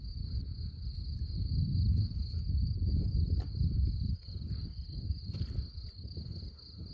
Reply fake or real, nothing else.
real